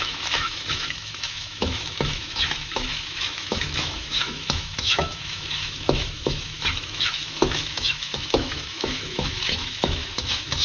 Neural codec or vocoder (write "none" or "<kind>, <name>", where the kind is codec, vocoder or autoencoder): autoencoder, DAC-VAE